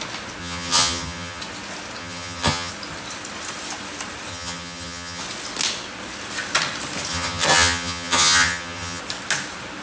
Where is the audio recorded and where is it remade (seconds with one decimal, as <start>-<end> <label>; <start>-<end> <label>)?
0.0-0.4 recorded; 0.4-1.4 remade; 1.4-2.0 recorded; 2.0-2.7 remade; 2.7-4.3 recorded; 4.3-5.2 remade; 5.2-7.1 recorded; 7.1-9.0 remade; 9.0-9.8 recorded